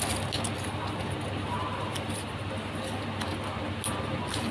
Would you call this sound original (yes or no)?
yes